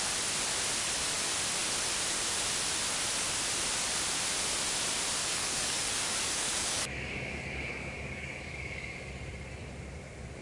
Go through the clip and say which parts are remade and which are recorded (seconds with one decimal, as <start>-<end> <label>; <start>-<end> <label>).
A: 0.0-5.2 recorded; 5.2-9.1 remade; 9.1-10.4 recorded